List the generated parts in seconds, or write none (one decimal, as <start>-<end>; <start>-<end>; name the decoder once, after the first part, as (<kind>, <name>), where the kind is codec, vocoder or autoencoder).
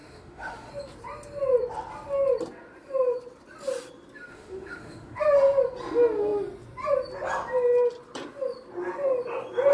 0.0-0.7 (autoencoder, DAC-VAE); 4.3-5.2